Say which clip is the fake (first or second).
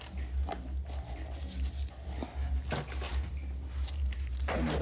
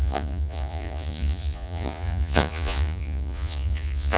second